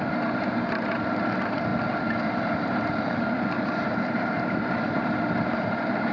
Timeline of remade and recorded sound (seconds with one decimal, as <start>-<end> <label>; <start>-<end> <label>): 0.0-6.1 remade